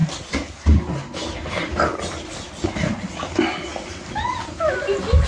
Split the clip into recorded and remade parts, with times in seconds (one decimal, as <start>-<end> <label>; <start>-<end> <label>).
0.0-5.3 recorded